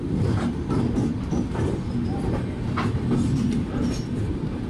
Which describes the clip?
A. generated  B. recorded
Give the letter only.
B